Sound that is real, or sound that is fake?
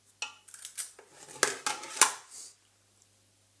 real